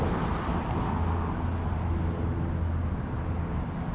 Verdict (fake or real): real